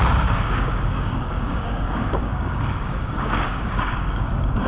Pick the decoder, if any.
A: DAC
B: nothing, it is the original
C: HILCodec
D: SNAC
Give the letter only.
A